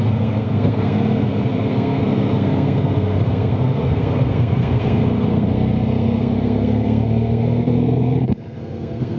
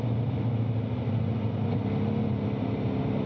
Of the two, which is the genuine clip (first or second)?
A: second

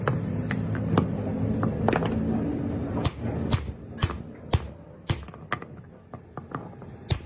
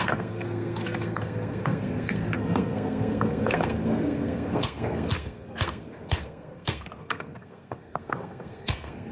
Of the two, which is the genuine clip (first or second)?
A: first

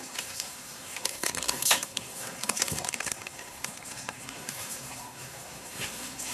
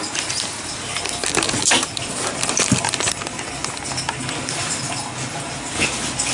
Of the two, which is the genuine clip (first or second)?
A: second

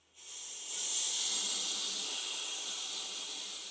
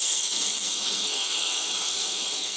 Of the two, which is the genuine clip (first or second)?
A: first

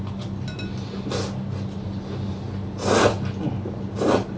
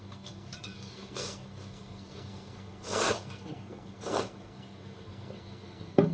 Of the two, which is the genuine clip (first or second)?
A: first